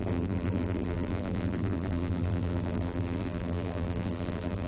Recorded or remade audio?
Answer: remade